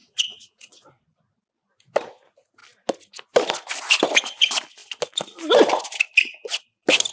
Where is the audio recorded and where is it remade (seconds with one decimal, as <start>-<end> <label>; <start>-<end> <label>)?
0.0-0.9 remade; 0.9-7.1 recorded